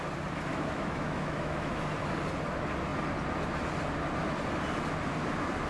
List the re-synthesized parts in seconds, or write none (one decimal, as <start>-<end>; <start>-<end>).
0.5-1.7